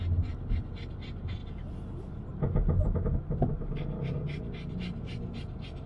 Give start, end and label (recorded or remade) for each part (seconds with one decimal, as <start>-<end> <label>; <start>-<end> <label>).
0.0-1.4 recorded; 1.4-2.3 remade; 2.3-5.9 recorded